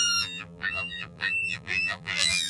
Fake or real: fake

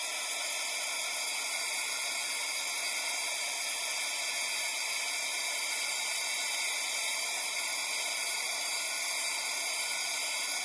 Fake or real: fake